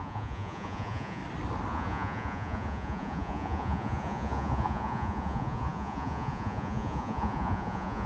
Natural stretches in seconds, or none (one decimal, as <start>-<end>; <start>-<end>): 1.2-1.7